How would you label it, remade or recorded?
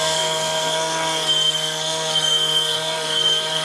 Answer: remade